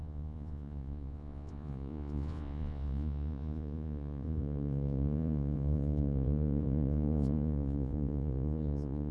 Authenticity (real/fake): fake